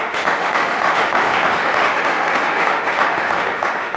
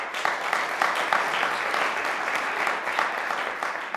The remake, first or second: first